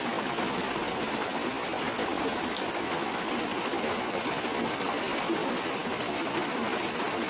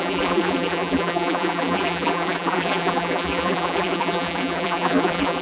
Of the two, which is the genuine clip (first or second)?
first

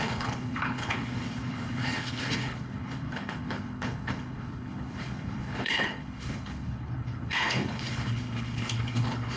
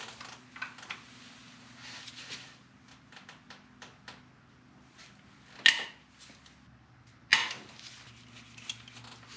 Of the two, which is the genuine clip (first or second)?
second